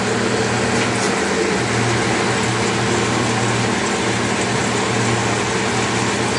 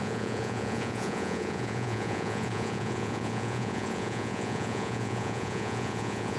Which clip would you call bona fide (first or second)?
first